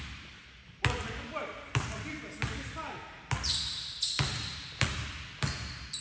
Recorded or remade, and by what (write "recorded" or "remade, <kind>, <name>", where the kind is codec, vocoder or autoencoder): recorded